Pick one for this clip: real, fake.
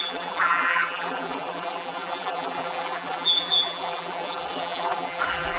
fake